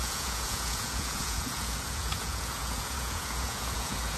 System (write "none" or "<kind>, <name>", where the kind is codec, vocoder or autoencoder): vocoder, Vocos